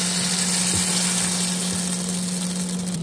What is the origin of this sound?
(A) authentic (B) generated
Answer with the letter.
A